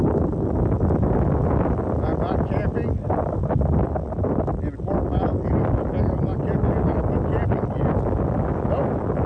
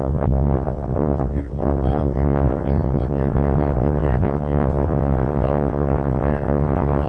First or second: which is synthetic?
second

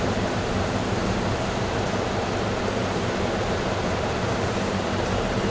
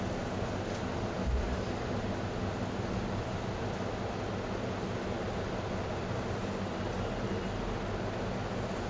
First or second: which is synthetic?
first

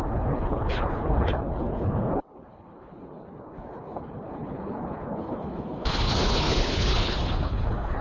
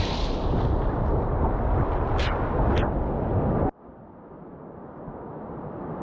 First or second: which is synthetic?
first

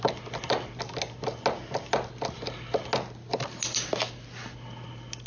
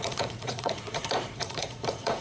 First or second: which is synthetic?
second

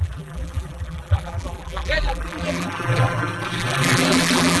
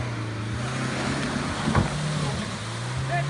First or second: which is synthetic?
first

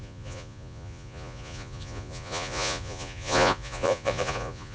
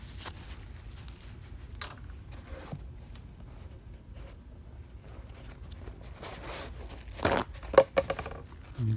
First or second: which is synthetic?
first